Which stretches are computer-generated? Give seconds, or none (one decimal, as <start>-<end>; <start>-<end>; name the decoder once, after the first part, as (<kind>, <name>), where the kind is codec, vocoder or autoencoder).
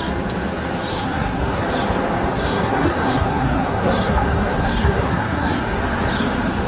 0.9-1.6 (codec, SNAC); 2.3-5.8